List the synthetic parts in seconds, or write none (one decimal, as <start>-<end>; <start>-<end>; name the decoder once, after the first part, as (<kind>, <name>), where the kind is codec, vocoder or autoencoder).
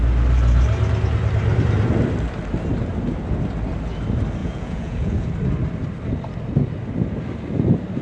4.4-5.3 (vocoder, Vocos)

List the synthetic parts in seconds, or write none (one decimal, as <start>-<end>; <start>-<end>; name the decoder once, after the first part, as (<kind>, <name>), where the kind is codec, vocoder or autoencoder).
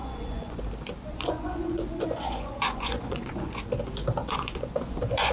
0.0-0.6 (vocoder, Vocos); 1.1-3.6; 4.2-5.3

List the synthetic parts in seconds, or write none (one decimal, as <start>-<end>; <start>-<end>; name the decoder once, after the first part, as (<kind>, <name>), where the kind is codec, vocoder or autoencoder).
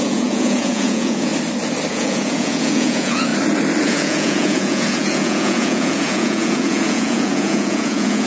0.0-1.3 (vocoder, Vocos); 1.9-3.3; 3.8-8.3